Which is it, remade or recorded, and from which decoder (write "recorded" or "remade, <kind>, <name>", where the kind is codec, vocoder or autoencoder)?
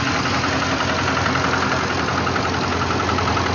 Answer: recorded